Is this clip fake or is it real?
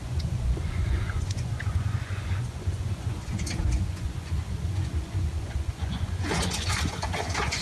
fake